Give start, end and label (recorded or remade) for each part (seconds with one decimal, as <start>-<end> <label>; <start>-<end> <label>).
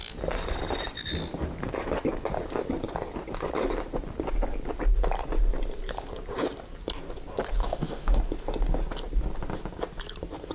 0.0-7.6 recorded; 7.6-8.2 remade; 8.2-10.5 recorded